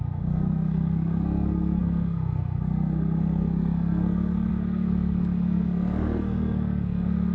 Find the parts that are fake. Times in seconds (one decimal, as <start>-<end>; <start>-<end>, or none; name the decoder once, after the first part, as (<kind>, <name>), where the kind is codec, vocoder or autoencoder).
0.0-7.3 (codec, SNAC)